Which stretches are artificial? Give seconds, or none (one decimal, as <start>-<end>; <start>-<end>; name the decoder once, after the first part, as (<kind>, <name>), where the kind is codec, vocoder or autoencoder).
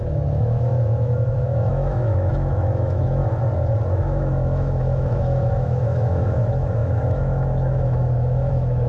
0.0-3.2 (autoencoder, DAC-VAE); 4.0-8.9